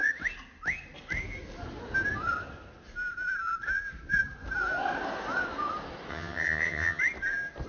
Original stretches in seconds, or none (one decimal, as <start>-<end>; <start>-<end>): 0.0-6.1; 7.0-7.7